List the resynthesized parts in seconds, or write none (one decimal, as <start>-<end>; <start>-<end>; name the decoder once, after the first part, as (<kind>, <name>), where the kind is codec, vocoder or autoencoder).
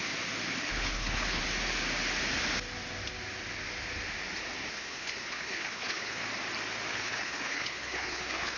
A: 0.6-1.4 (codec, HILCodec); 4.7-6.2; 6.9-8.6